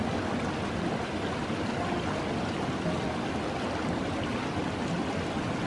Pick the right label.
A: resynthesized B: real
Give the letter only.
B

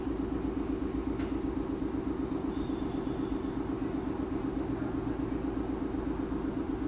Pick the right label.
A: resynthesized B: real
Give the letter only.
B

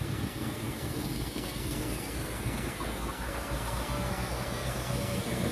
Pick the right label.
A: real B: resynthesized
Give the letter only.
B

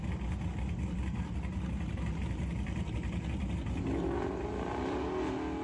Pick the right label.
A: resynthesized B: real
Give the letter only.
B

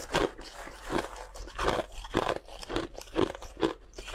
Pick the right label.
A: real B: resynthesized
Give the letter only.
A